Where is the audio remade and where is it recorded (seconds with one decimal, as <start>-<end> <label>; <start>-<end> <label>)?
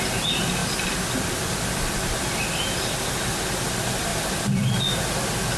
0.0-5.6 recorded